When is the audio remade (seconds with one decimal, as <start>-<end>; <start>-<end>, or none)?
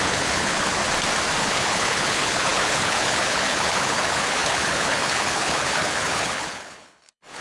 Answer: 0.0-0.8; 1.4-7.4